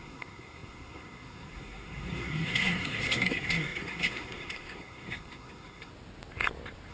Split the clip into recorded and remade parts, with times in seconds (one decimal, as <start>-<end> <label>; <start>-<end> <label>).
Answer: 0.0-5.9 remade; 5.9-6.9 recorded